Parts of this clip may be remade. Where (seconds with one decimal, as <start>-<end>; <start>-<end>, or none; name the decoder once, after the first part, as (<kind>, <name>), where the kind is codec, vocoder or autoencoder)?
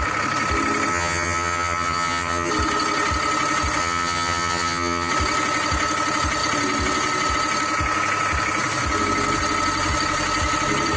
0.9-2.5 (vocoder, HiFi-GAN); 3.8-5.1